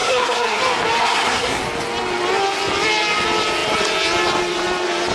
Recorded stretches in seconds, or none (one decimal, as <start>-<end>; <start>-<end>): 0.6-1.0; 1.6-5.1